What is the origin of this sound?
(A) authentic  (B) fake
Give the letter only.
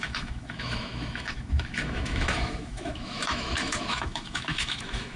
B